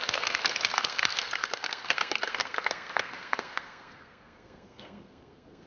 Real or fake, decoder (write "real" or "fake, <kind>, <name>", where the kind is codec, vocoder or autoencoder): fake, codec, SNAC